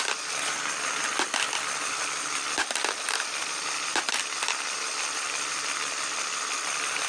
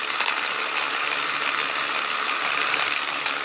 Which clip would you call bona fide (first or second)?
second